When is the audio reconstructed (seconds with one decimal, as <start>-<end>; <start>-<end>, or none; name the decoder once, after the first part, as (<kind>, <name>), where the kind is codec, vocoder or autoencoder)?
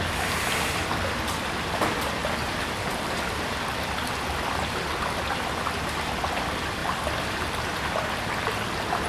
2.2-6.1 (vocoder, BigVGAN v2); 6.8-7.6